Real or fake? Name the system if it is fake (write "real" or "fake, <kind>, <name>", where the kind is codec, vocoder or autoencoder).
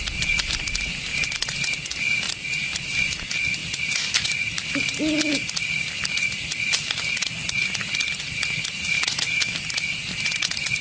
real